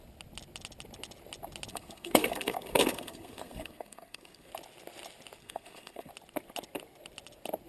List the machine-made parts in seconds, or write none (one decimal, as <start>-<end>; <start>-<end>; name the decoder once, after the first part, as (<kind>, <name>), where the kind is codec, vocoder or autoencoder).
1.7-4.5 (codec, SNAC); 5.4-6.1